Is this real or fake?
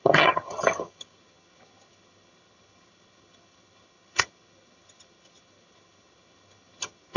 fake